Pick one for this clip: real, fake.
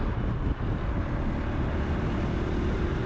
real